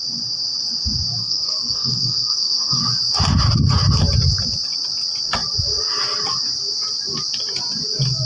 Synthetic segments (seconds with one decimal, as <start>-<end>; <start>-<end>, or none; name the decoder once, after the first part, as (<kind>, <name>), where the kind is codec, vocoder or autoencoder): 1.2-2.8 (codec, SNAC)